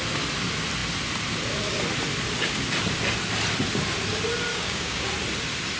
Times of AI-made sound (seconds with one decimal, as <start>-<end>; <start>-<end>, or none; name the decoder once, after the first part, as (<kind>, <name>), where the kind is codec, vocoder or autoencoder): 4.5-5.1 (codec, DAC)